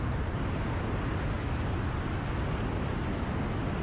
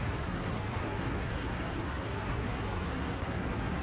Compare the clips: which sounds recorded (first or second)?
first